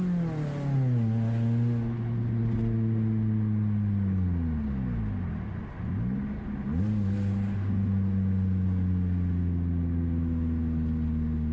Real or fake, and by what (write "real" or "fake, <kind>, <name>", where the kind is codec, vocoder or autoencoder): real